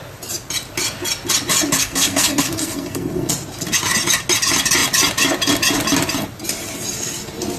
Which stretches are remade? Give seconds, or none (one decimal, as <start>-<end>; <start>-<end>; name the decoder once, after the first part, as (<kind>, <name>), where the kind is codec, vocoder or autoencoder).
1.8-3.3 (codec, SNAC)